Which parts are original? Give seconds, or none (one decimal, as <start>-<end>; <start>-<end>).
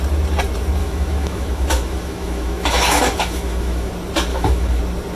0.0-0.8; 3.9-4.3; 4.8-5.2